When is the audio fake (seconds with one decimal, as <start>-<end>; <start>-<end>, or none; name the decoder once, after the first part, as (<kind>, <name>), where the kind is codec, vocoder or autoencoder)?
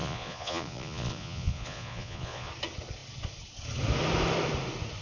0.0-2.5 (vocoder, Vocos)